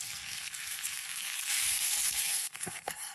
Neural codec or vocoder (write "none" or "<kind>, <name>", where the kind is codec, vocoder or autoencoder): codec, SNAC